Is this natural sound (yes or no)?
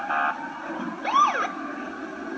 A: yes